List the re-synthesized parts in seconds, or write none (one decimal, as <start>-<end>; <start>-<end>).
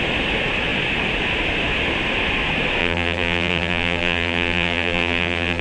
2.8-5.6